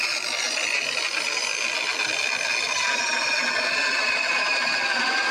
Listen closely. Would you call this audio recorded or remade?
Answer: recorded